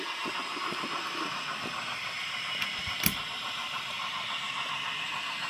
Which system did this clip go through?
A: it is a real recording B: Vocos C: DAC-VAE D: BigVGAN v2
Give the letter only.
A